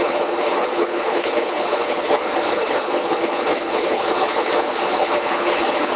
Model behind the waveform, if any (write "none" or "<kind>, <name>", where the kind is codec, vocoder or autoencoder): codec, HILCodec